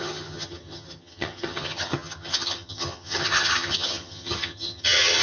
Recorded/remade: remade